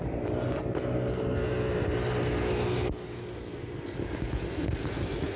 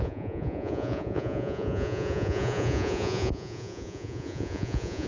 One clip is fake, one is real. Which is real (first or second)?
first